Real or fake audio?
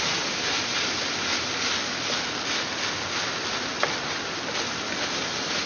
real